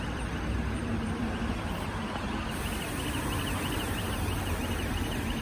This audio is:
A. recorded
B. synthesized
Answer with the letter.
A